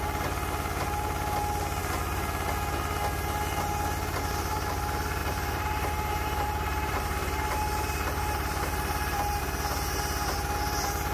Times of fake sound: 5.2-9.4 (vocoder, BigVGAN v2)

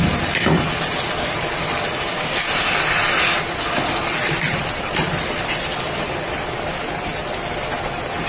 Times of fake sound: none

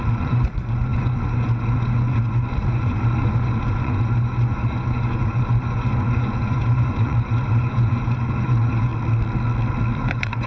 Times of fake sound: 0.0-8.9 (vocoder, Vocos); 10.1-10.5

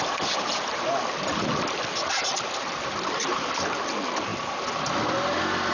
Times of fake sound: none

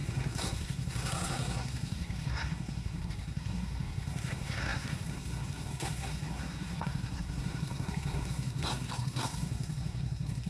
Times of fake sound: 0.0-10.5 (codec, SNAC)

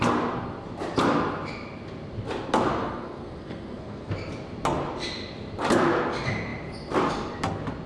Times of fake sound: 2.8-4.1 (codec, SNAC)

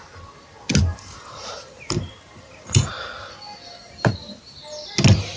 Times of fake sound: 0.9-2.9 (vocoder, BigVGAN v2); 3.8-4.6